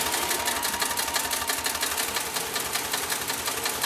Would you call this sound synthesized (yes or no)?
no